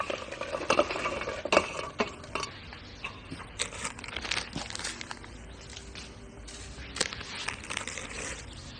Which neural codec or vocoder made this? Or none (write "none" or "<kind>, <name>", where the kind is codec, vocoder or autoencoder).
none